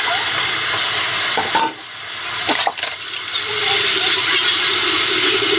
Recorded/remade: recorded